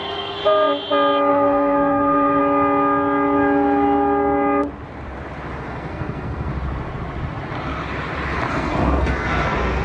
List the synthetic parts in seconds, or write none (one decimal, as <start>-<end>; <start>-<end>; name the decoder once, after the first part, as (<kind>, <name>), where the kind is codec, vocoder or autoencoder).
0.0-0.4 (codec, SNAC); 1.3-2.4; 5.6-6.5; 8.5-9.8